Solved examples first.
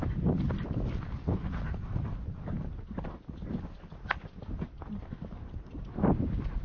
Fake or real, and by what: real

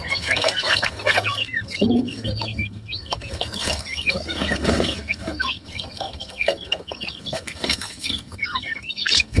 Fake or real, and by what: fake, codec, SNAC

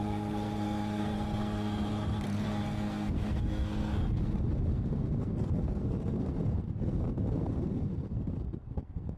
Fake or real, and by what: fake, codec, SNAC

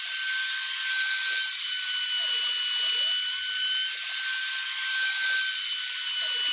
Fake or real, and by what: real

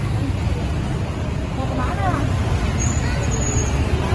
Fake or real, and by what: real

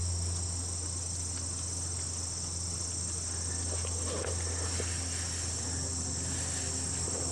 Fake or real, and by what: real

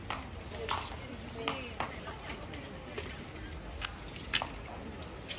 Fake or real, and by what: real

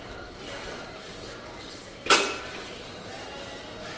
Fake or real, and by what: fake, vocoder, BigVGAN v2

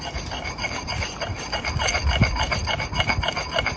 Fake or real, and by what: real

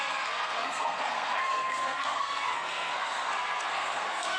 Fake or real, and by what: fake, codec, SNAC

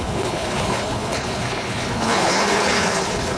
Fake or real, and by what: fake, codec, HILCodec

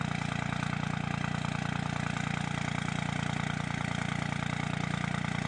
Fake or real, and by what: real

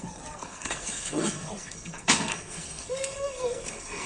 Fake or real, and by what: fake, codec, SNAC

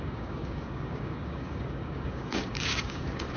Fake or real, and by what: fake, codec, DAC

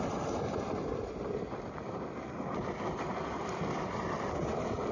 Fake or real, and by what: fake, vocoder, BigVGAN v2